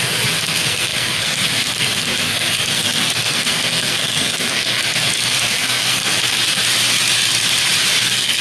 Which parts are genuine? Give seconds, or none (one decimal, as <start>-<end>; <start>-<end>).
6.6-8.0